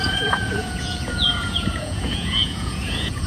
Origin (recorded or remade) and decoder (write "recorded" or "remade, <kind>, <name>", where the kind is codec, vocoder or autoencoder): remade, vocoder, Vocos